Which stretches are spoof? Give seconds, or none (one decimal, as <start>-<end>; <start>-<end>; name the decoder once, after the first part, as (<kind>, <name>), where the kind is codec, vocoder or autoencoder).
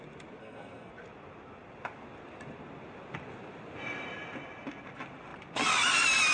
0.4-0.9 (codec, SNAC)